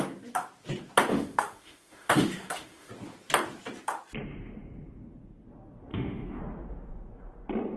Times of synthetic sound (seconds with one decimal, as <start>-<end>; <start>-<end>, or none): 1.1-2.9; 5.9-6.4

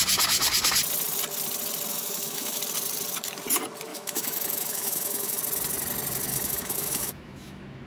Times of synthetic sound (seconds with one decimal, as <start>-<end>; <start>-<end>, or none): 1.9-2.6; 3.9-5.4; 6.3-7.9

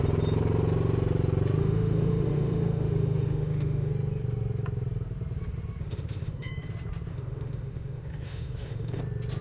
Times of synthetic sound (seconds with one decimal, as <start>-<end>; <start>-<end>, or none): 1.6-3.9; 5.8-6.5; 7.1-9.0

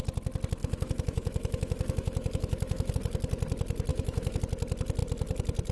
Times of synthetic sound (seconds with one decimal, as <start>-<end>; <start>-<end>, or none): 0.6-2.9; 3.9-4.4

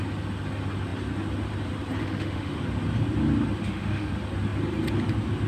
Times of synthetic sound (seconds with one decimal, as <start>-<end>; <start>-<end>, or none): 2.0-2.6; 3.6-4.1

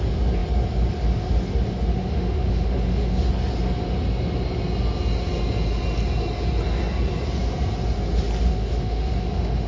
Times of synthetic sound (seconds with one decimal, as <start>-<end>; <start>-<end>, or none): 1.9-3.3; 8.5-9.7

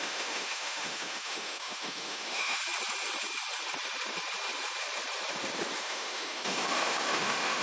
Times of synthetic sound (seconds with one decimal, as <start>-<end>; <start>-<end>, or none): 0.0-2.6; 5.8-7.6

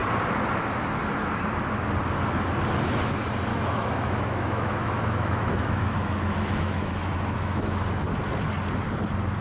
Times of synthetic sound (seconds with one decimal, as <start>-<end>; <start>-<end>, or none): 3.5-7.8